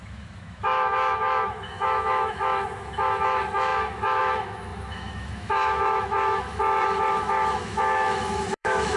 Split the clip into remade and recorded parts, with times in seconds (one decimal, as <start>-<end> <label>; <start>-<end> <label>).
0.0-9.0 remade

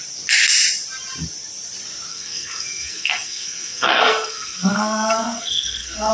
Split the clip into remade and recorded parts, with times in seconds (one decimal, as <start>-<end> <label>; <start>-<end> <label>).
0.0-2.1 recorded; 2.1-6.1 remade

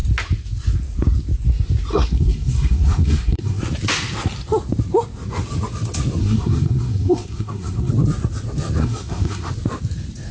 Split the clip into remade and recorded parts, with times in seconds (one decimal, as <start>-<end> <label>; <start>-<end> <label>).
0.0-1.9 recorded; 1.9-3.6 remade; 3.6-6.2 recorded; 6.2-7.9 remade; 7.9-8.8 recorded; 8.8-9.5 remade; 9.5-10.3 recorded

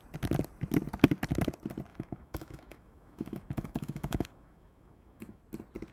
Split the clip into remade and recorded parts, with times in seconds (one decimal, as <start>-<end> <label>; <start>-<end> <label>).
0.0-1.9 recorded; 1.9-5.4 remade; 5.4-5.9 recorded

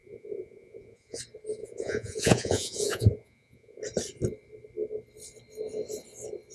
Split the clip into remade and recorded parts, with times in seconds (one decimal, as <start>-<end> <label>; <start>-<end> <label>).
0.0-1.2 remade; 1.2-1.6 recorded; 1.6-3.8 remade; 3.8-6.5 recorded

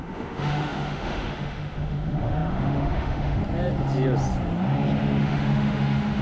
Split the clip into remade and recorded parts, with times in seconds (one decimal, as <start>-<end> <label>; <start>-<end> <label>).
0.0-3.4 remade; 3.4-5.2 recorded; 5.2-6.2 remade